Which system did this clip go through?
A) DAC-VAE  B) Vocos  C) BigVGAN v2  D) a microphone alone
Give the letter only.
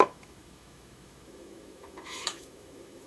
A